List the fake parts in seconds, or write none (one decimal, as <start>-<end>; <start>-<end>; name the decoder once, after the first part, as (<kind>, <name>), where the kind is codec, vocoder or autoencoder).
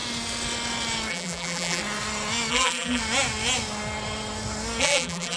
1.1-1.8 (vocoder, BigVGAN v2); 2.5-3.0; 4.8-5.4